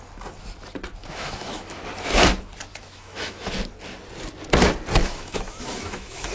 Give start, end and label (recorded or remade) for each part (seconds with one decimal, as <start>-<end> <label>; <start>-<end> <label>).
0.0-1.0 recorded; 1.0-1.8 remade; 1.8-2.7 recorded; 2.7-3.5 remade; 3.5-5.0 recorded; 5.0-6.3 remade